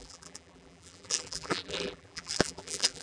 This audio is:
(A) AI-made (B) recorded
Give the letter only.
A